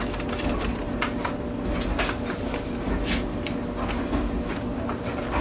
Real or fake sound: real